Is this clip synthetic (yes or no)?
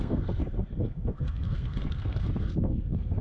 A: yes